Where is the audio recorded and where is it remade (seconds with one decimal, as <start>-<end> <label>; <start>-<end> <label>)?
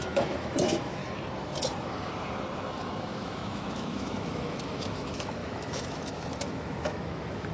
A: 0.0-1.0 remade; 1.0-3.0 recorded; 3.0-7.5 remade